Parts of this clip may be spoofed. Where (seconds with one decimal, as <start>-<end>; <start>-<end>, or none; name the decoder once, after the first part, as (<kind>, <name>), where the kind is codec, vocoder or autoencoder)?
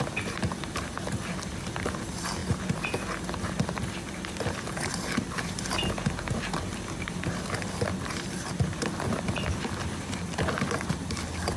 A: 0.0-2.4 (vocoder, BigVGAN v2); 3.3-11.6